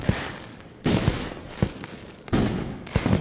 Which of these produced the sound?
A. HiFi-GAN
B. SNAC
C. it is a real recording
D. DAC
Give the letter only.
D